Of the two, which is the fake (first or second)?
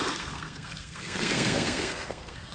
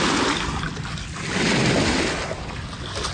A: first